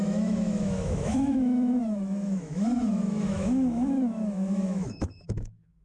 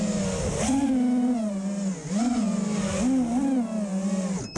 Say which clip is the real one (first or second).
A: second